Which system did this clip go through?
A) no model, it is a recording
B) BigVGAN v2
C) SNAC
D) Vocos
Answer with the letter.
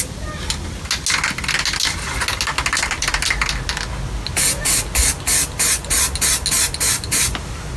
A